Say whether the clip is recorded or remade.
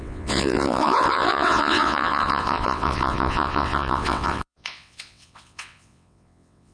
remade